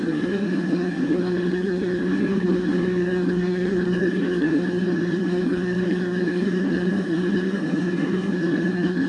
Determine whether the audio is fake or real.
fake